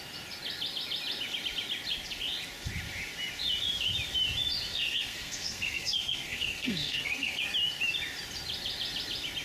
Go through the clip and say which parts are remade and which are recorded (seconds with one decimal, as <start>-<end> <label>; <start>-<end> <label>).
0.0-4.7 recorded; 4.7-7.4 remade; 7.4-9.4 recorded